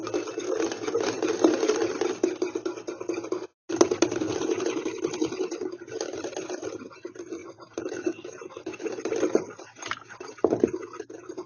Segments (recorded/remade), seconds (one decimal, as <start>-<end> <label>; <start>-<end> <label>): 0.0-7.4 recorded; 7.4-8.6 remade; 8.6-11.5 recorded